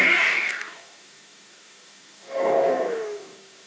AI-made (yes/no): yes